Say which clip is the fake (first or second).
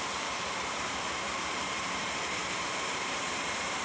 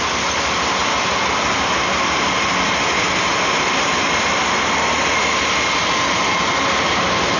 first